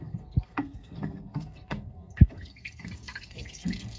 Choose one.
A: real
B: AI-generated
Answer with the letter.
B